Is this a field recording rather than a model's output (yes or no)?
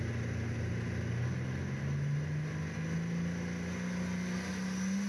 yes